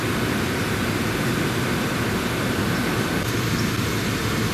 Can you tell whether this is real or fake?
real